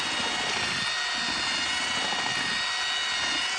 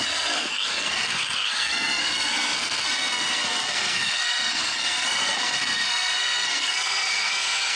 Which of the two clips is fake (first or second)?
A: second